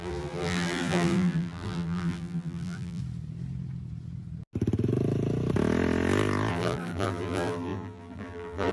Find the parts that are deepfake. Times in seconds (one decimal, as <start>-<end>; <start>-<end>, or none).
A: 0.0-3.0; 6.5-8.7